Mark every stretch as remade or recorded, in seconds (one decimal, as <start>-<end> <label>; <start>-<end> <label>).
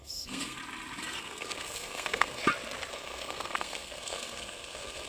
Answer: 0.0-0.6 remade; 0.6-1.2 recorded; 1.2-2.4 remade; 2.4-2.9 recorded; 2.9-5.1 remade